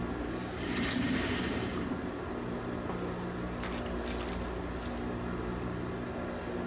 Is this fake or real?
real